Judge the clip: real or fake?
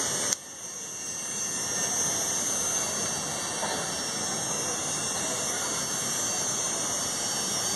fake